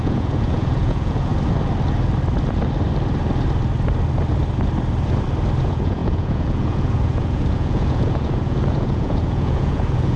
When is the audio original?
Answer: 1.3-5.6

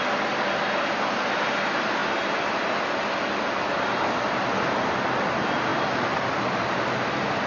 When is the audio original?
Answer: 0.0-7.5

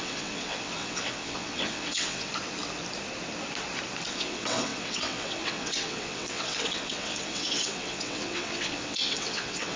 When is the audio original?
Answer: 2.3-4.1

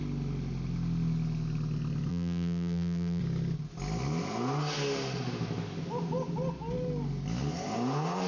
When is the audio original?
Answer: 0.0-2.1; 3.2-8.3